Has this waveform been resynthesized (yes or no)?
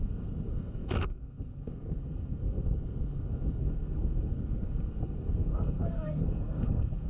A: yes